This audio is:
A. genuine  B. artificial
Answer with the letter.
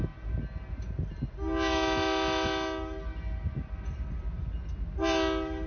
A